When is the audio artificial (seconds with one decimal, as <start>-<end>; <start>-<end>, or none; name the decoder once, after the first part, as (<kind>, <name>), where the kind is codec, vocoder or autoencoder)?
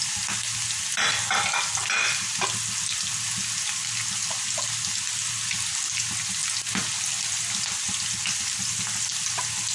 none